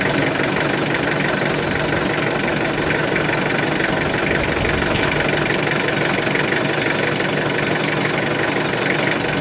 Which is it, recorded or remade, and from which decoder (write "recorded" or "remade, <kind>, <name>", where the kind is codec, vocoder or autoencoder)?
recorded